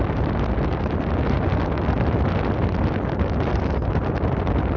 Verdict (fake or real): real